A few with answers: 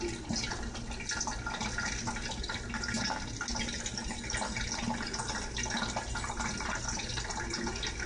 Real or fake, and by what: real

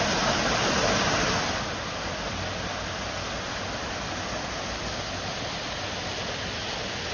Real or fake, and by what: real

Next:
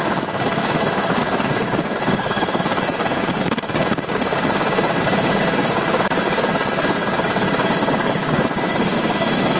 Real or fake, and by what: fake, codec, DAC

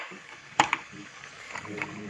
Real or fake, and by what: fake, codec, DAC